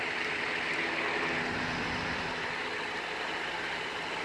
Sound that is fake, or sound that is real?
real